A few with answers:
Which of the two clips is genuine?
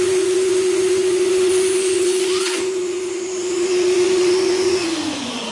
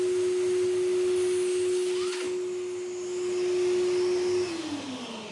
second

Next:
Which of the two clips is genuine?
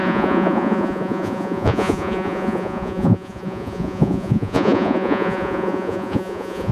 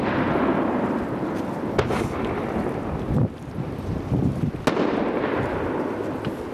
second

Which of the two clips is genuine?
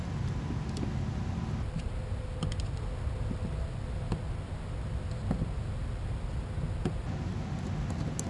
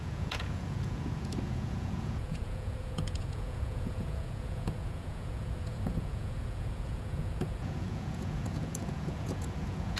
first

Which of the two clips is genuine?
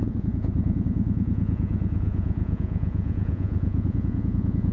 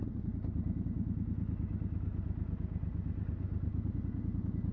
second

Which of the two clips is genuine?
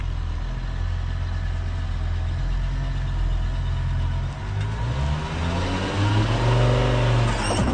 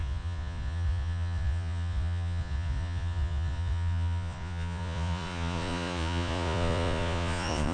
first